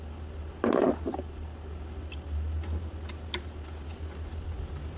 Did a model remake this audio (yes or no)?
no